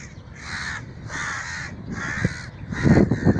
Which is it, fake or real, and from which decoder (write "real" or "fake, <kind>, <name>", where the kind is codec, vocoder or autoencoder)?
real